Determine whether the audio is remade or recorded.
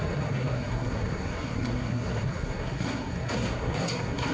remade